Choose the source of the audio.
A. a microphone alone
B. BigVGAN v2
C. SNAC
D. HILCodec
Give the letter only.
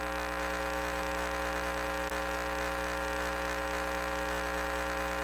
A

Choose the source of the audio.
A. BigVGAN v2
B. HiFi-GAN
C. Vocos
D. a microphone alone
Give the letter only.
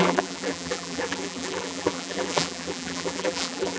A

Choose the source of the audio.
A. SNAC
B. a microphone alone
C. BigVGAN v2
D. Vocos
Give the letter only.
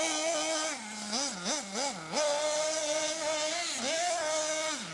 B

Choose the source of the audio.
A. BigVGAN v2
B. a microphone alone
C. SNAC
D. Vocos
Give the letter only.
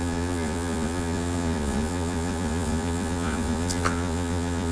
D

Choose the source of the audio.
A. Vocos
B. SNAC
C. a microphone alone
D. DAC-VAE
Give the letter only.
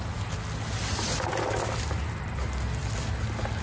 C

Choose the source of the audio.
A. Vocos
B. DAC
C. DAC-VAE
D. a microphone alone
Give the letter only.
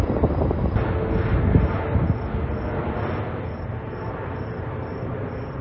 D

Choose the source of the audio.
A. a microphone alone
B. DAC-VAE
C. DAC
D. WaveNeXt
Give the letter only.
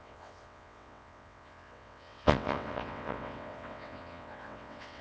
D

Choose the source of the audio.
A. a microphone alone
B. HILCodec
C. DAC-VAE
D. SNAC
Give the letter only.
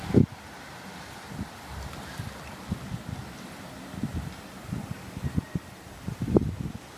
A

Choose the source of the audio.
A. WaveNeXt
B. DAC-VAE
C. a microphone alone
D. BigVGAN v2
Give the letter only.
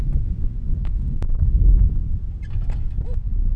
C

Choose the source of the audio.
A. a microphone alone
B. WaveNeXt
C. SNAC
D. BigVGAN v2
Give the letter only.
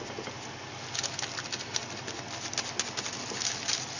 A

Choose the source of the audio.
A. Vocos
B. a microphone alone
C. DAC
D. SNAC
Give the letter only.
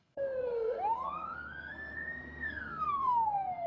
D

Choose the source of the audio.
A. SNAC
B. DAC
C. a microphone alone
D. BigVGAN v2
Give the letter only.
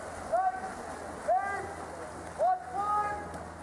C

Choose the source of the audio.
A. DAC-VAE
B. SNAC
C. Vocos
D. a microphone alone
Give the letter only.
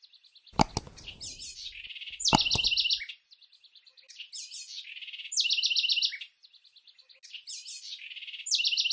D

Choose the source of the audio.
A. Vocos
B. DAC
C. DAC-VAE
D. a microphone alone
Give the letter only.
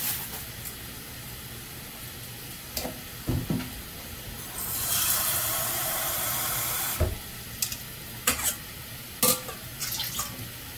D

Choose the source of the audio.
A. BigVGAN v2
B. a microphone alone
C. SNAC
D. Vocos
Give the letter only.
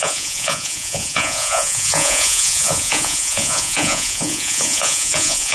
D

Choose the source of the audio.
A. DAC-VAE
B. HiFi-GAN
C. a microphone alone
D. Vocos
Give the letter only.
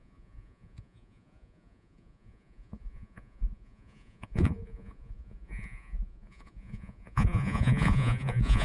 D